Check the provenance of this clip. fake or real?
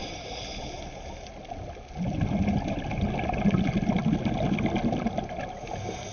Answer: real